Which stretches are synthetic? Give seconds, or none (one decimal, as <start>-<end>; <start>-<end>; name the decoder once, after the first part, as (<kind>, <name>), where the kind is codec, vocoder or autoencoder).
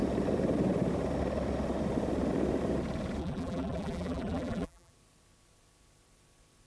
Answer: 3.2-4.9 (vocoder, BigVGAN v2)